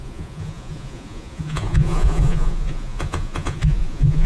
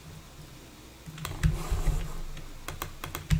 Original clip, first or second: second